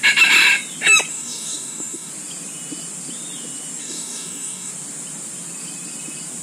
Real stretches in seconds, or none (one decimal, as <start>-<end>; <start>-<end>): 0.0-1.1; 2.1-3.8; 4.7-6.4